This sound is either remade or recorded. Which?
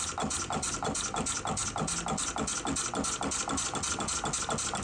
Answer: recorded